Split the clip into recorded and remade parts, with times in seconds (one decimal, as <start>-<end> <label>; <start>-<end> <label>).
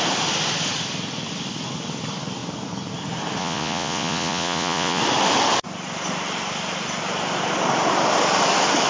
0.0-3.4 recorded; 3.4-5.0 remade; 5.0-8.9 recorded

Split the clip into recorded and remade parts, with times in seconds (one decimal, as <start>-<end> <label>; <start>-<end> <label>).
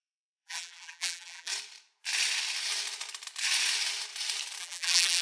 0.0-1.5 remade; 1.5-4.6 recorded; 4.6-5.2 remade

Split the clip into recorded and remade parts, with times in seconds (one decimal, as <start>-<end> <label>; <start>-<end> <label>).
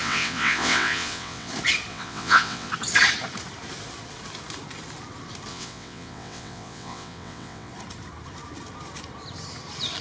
0.0-1.5 remade; 1.5-1.9 recorded; 1.9-2.7 remade; 2.7-5.5 recorded; 5.5-7.7 remade; 7.7-10.0 recorded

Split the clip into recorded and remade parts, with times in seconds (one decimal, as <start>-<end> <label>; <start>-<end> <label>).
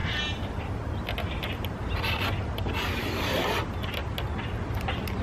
0.0-5.2 recorded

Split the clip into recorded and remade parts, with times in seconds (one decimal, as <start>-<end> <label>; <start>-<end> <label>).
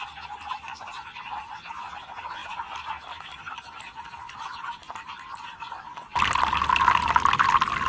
0.0-7.9 recorded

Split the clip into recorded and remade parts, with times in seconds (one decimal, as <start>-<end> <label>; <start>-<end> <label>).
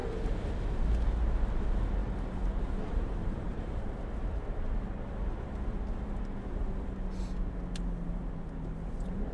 0.0-2.0 recorded; 2.0-4.0 remade; 4.0-9.3 recorded